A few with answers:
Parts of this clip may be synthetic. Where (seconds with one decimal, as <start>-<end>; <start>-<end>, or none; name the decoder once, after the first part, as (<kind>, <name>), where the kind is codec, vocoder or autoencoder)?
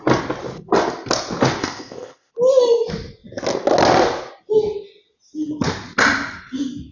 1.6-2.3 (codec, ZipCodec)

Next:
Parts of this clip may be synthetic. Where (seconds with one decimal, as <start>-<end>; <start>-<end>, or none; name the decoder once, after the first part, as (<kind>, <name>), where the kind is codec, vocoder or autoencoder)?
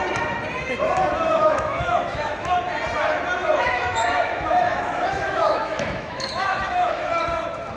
1.3-2.5 (autoencoder, DAC-VAE); 3.4-7.2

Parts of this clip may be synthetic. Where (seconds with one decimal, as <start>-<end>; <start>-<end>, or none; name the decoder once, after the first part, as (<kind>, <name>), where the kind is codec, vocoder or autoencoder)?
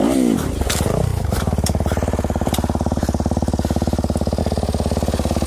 1.1-4.4 (vocoder, BigVGAN v2)